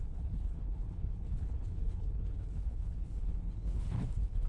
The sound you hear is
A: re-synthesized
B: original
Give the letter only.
A